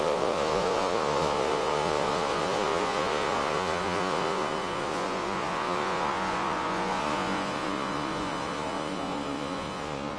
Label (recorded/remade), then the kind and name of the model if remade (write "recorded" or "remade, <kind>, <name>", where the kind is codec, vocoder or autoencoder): remade, vocoder, Vocos